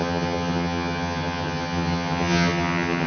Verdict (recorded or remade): remade